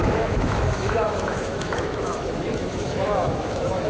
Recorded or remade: remade